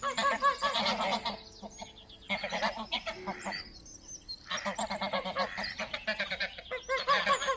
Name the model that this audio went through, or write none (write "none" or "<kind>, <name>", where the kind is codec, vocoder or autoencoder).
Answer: none